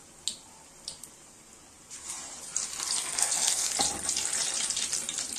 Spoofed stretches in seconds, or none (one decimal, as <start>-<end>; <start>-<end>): 3.0-3.7